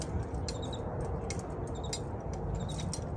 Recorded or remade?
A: recorded